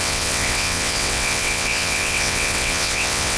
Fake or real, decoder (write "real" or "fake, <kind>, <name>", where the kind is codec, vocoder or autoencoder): fake, vocoder, WaveNeXt